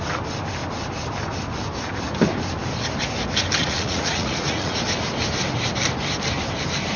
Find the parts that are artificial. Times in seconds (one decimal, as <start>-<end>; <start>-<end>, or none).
3.6-4.8